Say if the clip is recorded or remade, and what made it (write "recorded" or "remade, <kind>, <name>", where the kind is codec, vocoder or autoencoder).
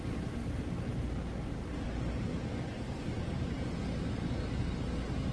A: recorded